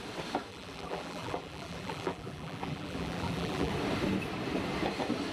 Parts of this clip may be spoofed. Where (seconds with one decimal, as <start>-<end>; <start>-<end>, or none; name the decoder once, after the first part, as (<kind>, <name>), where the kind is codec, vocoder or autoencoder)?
0.5-3.7 (vocoder, BigVGAN v2)

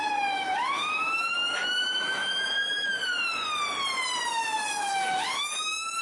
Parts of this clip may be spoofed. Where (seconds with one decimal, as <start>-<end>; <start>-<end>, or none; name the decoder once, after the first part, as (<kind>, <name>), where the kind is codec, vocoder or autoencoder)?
0.0-3.0 (autoencoder, DAC-VAE); 4.3-6.0

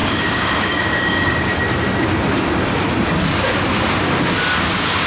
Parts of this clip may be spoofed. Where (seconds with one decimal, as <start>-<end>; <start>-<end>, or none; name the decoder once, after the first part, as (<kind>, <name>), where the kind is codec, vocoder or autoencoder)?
0.0-1.5 (codec, DAC); 4.6-5.1

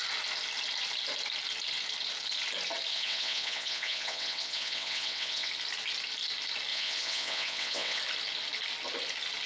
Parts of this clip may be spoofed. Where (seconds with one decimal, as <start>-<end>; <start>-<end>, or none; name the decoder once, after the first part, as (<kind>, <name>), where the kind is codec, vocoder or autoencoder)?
2.9-5.5 (vocoder, WaveNeXt); 6.7-8.0

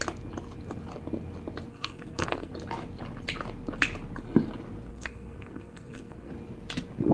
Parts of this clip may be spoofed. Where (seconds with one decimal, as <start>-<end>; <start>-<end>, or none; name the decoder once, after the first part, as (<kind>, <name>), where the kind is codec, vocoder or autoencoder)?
1.7-2.5 (codec, SNAC); 4.9-6.3

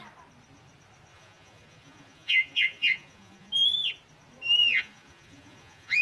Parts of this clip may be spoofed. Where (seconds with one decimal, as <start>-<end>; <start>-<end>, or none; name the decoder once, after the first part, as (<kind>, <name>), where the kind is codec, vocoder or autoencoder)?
1.1-3.5 (vocoder, Vocos); 4.6-6.0

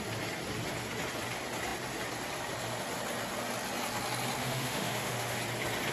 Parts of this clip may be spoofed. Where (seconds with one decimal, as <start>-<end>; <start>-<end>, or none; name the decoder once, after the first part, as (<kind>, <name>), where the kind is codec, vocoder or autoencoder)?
4.4-5.4 (autoencoder, DAC-VAE)